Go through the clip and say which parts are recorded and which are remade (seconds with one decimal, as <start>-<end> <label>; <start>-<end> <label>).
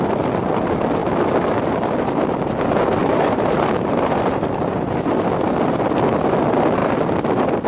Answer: 0.0-3.0 recorded; 3.0-5.1 remade; 5.1-7.7 recorded